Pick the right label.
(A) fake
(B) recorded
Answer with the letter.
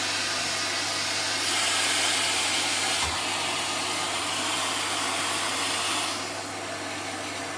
B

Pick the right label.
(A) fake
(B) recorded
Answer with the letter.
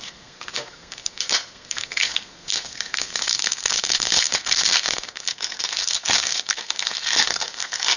A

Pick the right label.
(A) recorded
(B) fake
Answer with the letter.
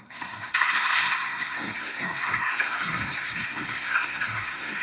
B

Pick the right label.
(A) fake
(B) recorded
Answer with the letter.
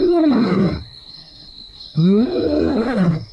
A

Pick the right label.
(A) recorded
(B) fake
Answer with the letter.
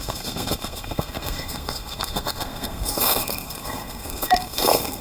B